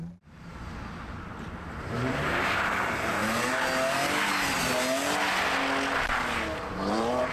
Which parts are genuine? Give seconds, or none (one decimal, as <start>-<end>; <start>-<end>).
0.5-1.1; 3.2-6.7